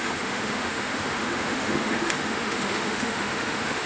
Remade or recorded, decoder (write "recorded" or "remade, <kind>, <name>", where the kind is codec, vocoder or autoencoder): remade, autoencoder, DAC-VAE